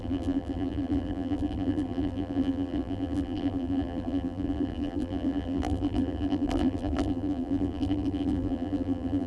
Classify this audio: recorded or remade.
remade